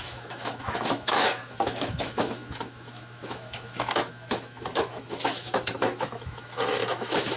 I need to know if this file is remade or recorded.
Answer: remade